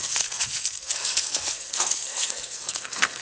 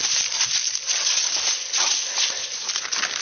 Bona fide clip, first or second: second